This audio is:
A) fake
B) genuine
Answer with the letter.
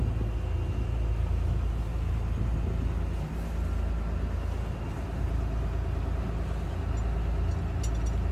B